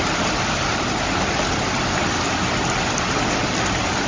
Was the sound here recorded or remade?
recorded